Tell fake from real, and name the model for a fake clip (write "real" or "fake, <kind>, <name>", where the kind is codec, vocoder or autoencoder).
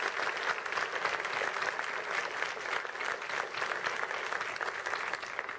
real